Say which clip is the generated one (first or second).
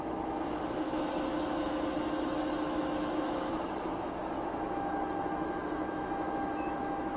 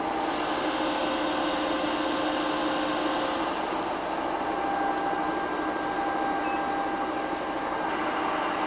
first